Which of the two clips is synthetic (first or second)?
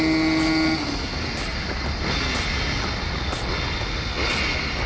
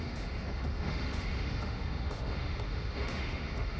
second